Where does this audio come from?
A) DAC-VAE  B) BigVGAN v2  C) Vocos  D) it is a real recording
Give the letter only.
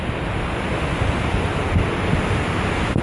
D